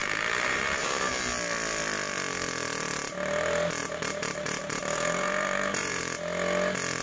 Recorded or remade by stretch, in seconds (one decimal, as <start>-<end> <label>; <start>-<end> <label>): 0.0-1.1 remade; 1.1-3.8 recorded; 3.8-6.0 remade; 6.0-7.0 recorded